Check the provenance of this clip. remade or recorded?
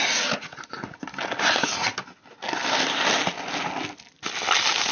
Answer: recorded